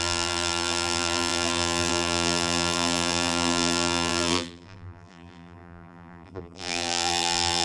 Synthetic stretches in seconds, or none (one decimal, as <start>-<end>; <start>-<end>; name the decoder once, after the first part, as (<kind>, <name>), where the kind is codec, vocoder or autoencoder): 0.0-7.6 (vocoder, BigVGAN v2)